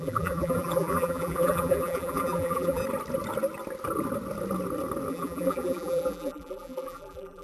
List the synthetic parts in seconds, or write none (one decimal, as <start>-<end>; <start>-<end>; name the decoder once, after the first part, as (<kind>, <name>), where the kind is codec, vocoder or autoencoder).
0.0-2.8 (vocoder, BigVGAN v2); 5.1-7.4